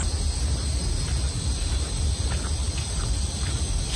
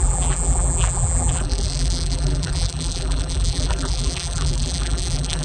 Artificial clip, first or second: second